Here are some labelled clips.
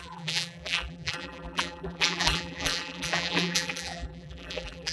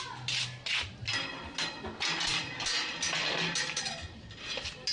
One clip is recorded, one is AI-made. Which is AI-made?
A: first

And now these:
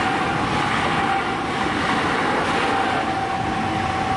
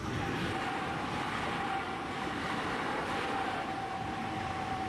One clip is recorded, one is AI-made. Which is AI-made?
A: second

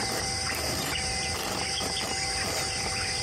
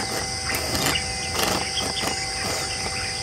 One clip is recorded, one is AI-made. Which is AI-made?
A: first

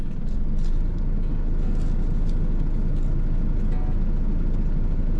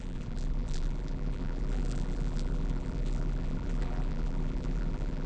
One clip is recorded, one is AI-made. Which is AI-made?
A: second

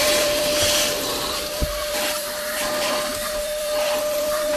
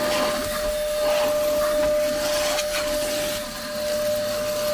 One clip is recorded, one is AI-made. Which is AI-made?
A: first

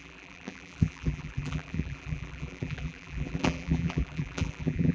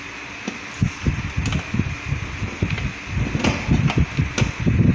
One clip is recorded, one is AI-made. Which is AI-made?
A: first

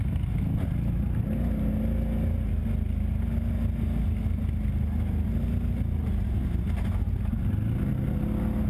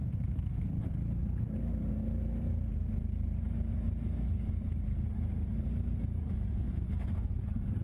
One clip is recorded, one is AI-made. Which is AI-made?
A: second